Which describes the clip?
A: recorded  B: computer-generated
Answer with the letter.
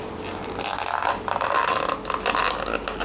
A